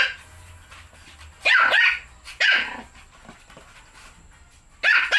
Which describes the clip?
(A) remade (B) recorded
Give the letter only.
B